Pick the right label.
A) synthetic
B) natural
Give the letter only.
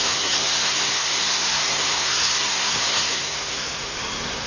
A